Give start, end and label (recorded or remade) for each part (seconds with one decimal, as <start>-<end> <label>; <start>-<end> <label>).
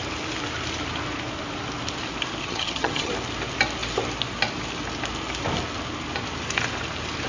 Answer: 0.0-2.4 recorded; 2.4-3.1 remade; 3.1-7.3 recorded